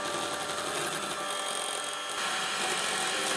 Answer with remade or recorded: recorded